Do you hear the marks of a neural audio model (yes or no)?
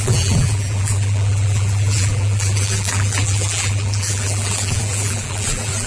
yes